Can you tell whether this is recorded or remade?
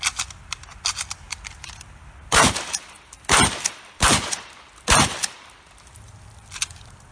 recorded